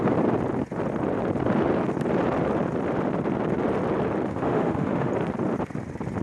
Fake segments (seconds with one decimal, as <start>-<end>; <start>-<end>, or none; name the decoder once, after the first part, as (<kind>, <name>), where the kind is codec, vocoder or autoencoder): 4.3-5.1 (autoencoder, DAC-VAE)